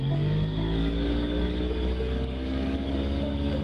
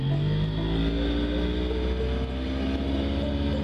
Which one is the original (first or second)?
second